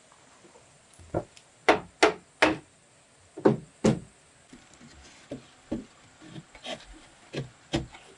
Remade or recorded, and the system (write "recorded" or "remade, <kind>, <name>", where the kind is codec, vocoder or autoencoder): recorded